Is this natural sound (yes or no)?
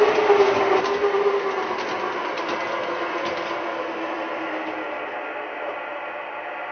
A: yes